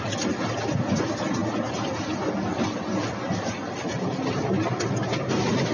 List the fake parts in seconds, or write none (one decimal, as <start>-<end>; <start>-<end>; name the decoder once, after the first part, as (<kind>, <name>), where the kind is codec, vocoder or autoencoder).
none